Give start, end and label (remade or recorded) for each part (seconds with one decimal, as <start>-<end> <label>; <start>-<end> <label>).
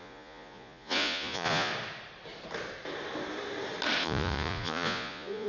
0.0-1.7 remade; 1.7-4.0 recorded; 4.0-5.5 remade